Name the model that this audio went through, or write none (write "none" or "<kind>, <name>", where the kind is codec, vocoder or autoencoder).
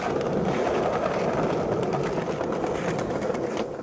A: none